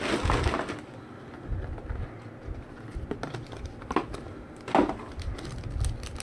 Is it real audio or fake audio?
real